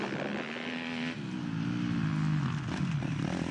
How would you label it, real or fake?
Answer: real